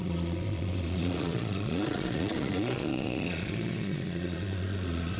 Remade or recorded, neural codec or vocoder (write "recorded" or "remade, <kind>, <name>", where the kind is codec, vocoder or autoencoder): remade, vocoder, Vocos